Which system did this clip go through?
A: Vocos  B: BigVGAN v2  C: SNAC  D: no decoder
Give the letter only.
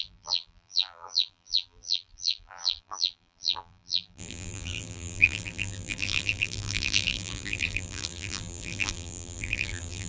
B